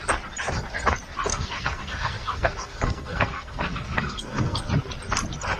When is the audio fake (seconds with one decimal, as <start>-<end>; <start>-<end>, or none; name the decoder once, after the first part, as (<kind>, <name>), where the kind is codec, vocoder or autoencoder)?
1.3-4.7 (codec, SNAC)